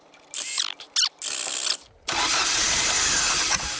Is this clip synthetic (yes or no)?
no